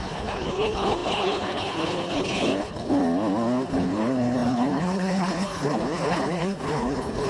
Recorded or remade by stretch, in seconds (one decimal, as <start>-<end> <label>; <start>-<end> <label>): 0.0-3.0 remade; 3.0-3.7 recorded; 3.7-7.3 remade